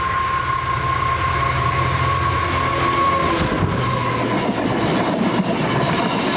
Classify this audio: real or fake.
real